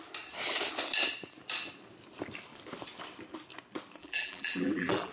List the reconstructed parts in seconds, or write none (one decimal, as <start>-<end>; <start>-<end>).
4.0-5.1